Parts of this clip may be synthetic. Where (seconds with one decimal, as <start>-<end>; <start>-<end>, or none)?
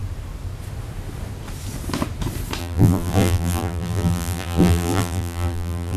2.6-6.0